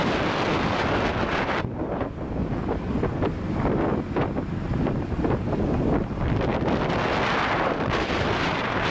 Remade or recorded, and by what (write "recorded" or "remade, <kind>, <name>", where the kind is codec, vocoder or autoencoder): recorded